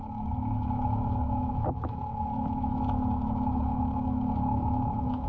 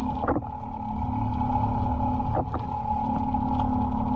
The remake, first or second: first